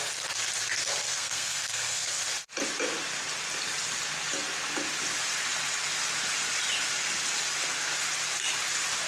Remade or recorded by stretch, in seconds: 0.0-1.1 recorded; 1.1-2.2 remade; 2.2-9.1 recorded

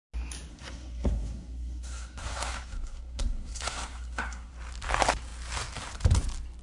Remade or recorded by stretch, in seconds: 0.0-0.5 recorded; 0.5-4.5 remade; 4.5-6.6 recorded

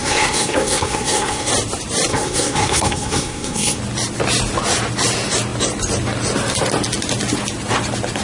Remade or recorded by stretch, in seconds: 0.0-1.5 remade; 1.5-2.1 recorded; 2.1-3.8 remade; 3.8-8.2 recorded

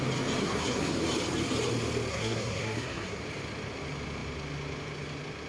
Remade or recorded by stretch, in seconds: 0.0-0.4 recorded; 0.4-0.9 remade; 0.9-2.1 recorded; 2.1-3.2 remade; 3.2-5.5 recorded

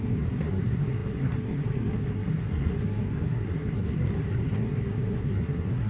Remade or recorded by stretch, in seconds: 0.0-5.9 remade

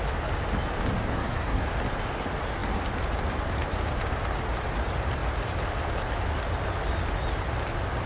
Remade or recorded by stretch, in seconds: 0.0-1.1 recorded; 1.1-1.7 remade; 1.7-8.1 recorded